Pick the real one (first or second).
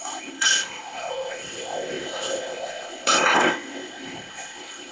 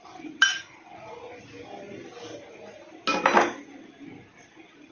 second